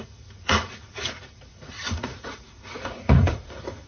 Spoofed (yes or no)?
yes